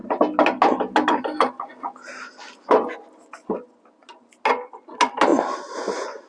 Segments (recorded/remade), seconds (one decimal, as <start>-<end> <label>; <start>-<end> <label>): 0.0-6.3 recorded